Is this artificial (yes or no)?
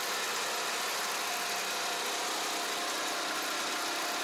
no